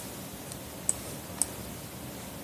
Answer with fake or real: real